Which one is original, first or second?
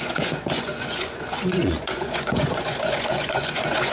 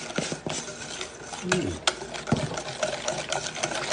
second